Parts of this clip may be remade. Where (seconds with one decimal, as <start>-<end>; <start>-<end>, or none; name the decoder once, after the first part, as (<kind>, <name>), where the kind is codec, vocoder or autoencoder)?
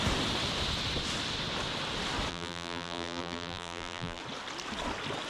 2.3-4.2 (vocoder, BigVGAN v2)